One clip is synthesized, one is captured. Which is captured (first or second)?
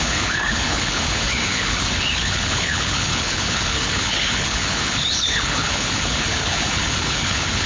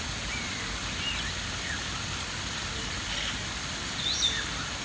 second